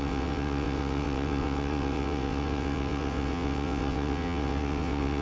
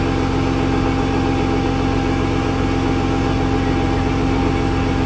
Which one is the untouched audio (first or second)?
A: second